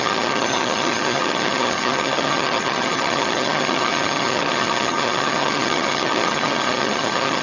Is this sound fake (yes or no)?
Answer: yes